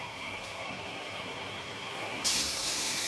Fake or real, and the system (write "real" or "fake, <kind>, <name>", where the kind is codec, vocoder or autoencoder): fake, codec, SNAC